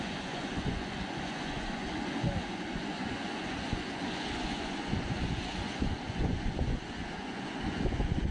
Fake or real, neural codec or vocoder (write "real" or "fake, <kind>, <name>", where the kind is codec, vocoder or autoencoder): fake, vocoder, Vocos